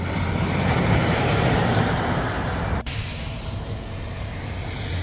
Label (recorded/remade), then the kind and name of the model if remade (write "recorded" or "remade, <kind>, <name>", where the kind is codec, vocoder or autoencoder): remade, vocoder, BigVGAN v2